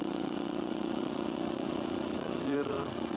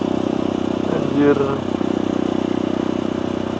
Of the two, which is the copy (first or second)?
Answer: first